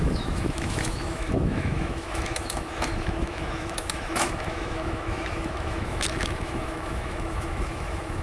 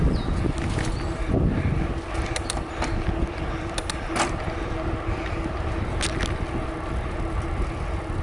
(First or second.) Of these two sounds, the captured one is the second